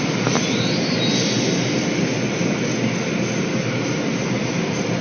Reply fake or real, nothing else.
real